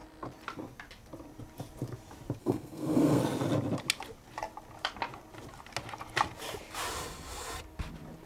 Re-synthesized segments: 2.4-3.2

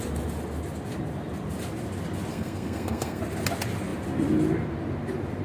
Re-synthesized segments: 2.3-3.2

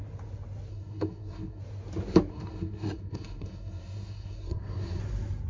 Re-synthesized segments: 0.7-1.6; 2.3-5.0

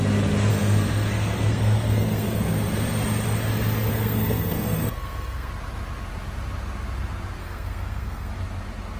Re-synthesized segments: 0.5-2.5; 3.9-5.5; 7.4-8.3

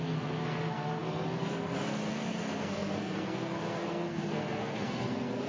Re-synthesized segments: 0.0-5.5

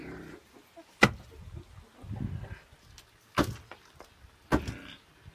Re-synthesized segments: none